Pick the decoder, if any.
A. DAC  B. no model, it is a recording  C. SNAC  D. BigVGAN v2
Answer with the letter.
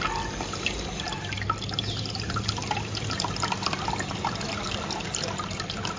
B